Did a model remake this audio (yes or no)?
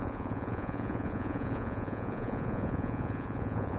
yes